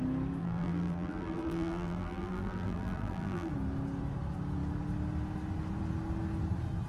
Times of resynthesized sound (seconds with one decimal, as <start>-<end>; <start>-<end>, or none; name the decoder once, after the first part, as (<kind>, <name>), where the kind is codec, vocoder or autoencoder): 0.4-3.5 (vocoder, BigVGAN v2)

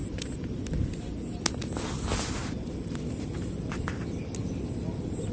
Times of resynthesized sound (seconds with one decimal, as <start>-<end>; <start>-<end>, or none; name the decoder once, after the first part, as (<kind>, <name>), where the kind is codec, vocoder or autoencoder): none

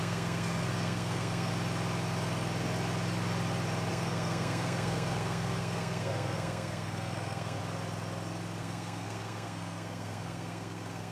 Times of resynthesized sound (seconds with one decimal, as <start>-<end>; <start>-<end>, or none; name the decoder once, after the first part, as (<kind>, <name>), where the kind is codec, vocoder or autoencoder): 0.0-1.5 (codec, SNAC); 3.9-7.6; 8.6-11.1

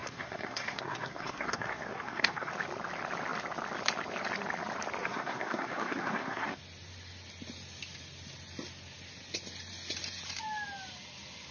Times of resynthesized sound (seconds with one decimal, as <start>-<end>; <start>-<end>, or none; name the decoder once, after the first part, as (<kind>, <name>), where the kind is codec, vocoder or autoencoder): 0.0-2.5 (codec, SNAC); 5.0-6.6

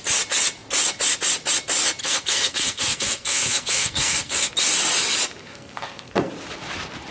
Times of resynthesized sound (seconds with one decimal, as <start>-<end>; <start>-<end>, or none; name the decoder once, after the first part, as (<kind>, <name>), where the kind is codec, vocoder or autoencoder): 2.0-4.5 (codec, SNAC); 5.4-6.3